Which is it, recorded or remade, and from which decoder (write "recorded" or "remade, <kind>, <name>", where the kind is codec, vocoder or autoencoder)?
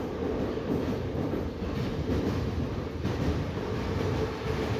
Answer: recorded